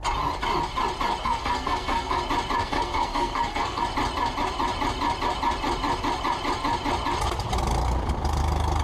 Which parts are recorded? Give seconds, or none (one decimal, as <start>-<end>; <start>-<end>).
0.0-1.2; 2.2-2.6; 3.8-8.8